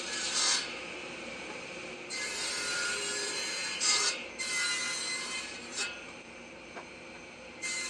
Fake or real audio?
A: fake